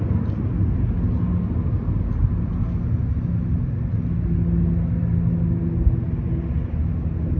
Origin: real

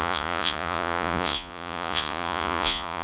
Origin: fake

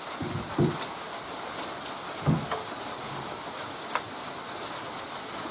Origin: real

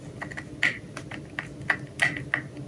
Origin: real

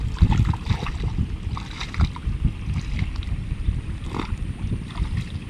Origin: real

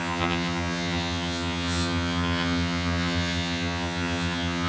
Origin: fake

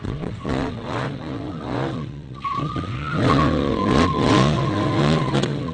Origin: fake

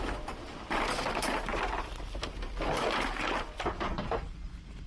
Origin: real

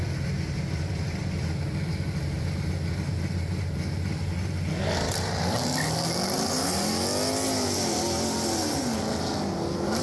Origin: real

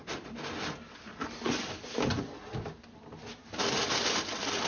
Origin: real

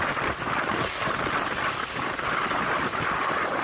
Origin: real